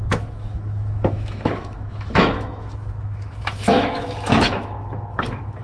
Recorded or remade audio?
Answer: remade